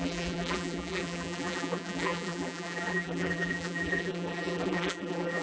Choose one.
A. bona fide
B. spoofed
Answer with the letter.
B